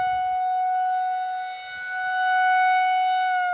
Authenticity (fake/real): real